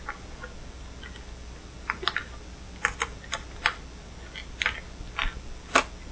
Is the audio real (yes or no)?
yes